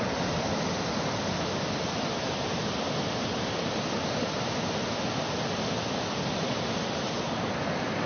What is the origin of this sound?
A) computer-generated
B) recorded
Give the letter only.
B